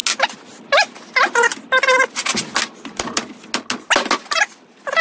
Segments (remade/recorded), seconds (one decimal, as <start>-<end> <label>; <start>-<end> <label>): 0.0-5.0 recorded